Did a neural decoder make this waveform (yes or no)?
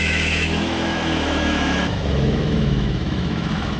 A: yes